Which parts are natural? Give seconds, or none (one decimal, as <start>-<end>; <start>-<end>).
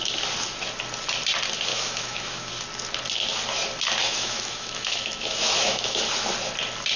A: 0.0-1.7; 2.5-4.0; 6.0-7.0